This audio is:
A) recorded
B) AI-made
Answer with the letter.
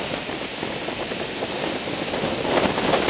A